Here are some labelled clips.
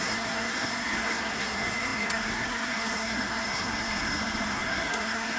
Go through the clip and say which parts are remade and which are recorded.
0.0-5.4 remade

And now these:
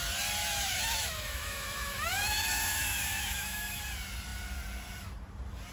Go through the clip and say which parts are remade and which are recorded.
0.0-0.4 recorded; 0.4-3.8 remade; 3.8-5.7 recorded

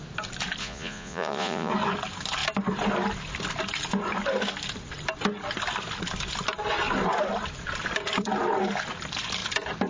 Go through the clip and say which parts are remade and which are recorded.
0.0-0.6 recorded; 0.6-1.7 remade; 1.7-9.9 recorded

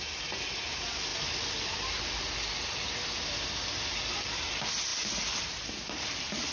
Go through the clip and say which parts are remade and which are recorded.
0.0-6.5 recorded